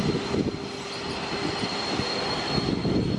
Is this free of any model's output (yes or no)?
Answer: yes